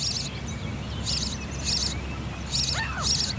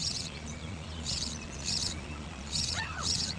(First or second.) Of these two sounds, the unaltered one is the first